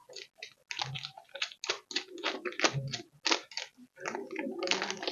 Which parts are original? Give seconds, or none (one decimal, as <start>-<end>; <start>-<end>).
0.0-5.1